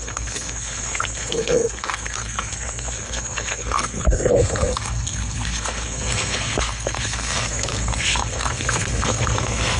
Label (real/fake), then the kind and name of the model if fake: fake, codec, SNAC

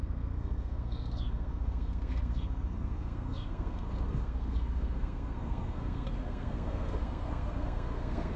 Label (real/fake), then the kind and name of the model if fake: fake, codec, SNAC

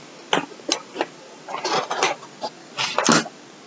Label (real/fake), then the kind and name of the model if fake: real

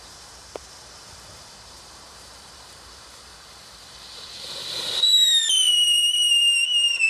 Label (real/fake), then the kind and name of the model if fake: fake, vocoder, BigVGAN v2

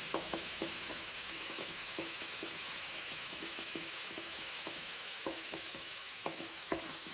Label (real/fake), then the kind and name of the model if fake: fake, autoencoder, DAC-VAE